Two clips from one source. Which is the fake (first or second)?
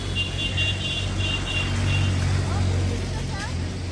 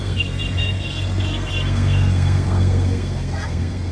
second